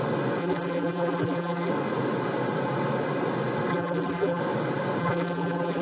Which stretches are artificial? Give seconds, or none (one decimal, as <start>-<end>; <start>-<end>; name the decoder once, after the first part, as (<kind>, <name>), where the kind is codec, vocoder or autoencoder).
0.4-1.7 (vocoder, BigVGAN v2); 3.7-4.4; 5.0-5.8